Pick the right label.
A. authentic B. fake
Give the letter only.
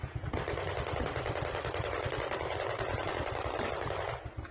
A